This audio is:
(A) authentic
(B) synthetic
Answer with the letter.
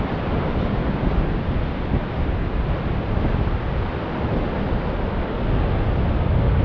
A